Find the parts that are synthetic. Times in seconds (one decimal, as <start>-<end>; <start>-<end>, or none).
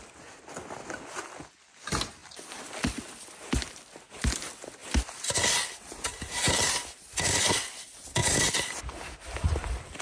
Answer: 2.2-3.1; 8.2-8.8